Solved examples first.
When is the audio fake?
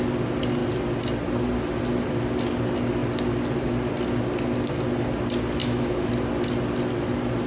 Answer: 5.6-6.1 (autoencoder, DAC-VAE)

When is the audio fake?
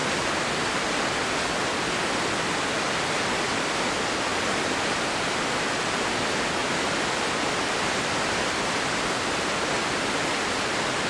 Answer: 4.3-5.6 (vocoder, BigVGAN v2); 6.6-8.4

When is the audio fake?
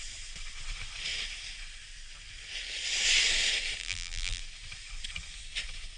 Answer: 3.8-4.4 (vocoder, BigVGAN v2)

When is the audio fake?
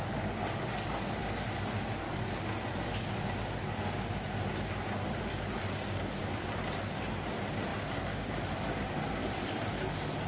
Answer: none